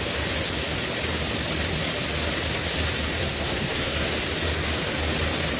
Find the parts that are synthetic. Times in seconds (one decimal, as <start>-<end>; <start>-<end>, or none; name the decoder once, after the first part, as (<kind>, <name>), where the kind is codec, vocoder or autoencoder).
3.2-4.1 (codec, SNAC)

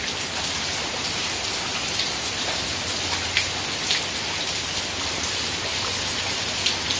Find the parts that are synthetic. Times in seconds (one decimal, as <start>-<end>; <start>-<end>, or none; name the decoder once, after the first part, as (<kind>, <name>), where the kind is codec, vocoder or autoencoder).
none

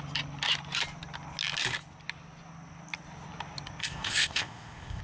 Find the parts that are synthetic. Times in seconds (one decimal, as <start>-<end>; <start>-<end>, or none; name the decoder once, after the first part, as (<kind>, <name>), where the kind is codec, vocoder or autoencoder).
3.8-5.0 (codec, ZipCodec)

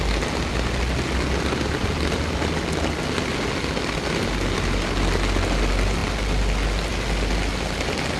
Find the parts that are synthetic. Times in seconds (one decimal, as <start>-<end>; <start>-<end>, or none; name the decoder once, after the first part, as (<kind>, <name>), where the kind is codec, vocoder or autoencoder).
none

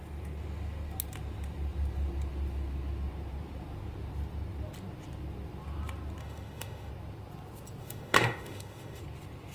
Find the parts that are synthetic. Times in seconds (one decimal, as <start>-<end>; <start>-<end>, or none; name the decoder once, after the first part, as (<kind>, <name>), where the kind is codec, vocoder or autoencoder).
6.2-6.9 (autoencoder, DAC-VAE); 7.8-9.0